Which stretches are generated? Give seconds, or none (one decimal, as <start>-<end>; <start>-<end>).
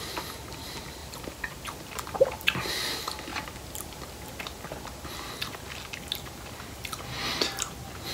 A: 1.0-2.7; 3.3-4.4